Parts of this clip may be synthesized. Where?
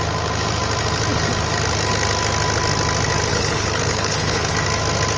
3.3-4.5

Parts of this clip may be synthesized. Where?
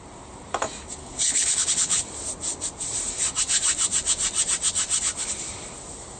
1.0-2.0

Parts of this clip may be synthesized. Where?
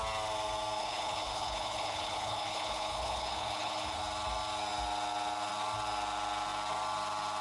0.8-4.0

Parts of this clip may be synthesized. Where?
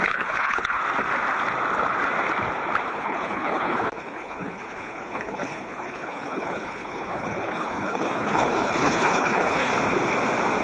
0.0-0.8; 2.9-9.7